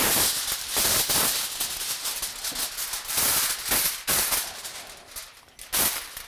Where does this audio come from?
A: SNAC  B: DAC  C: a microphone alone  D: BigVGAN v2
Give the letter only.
C